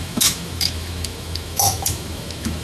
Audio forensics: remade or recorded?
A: remade